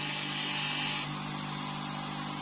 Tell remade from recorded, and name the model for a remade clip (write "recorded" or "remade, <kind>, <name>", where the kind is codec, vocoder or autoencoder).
recorded